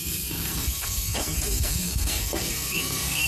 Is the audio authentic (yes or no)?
no